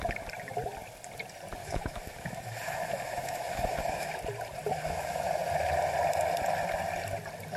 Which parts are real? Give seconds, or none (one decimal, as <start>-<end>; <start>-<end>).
0.0-1.6; 4.1-4.7; 5.3-7.6